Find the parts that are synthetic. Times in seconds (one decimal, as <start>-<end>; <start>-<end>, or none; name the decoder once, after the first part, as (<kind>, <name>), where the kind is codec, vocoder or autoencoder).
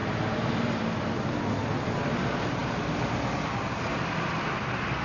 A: none